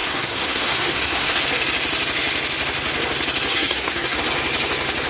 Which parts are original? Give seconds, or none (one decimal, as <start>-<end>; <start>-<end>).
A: 1.4-3.5; 4.2-5.1